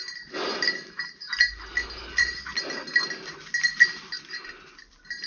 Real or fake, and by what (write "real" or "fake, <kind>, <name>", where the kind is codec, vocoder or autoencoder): real